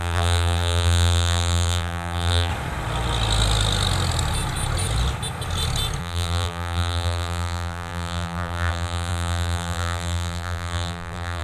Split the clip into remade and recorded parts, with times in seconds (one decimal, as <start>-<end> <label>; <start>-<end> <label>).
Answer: 0.0-2.5 remade; 2.5-6.0 recorded; 6.0-11.4 remade